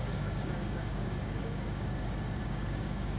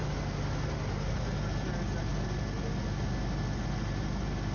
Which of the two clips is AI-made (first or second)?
first